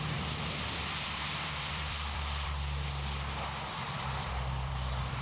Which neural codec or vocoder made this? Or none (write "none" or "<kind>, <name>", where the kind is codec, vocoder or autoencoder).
vocoder, BigVGAN v2